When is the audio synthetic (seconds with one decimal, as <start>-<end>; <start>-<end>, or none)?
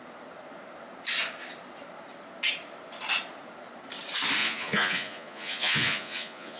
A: 4.4-6.6